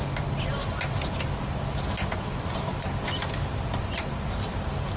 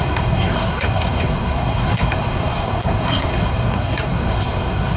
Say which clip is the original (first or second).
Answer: first